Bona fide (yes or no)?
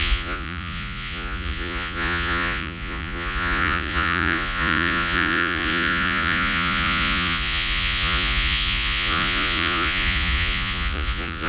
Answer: no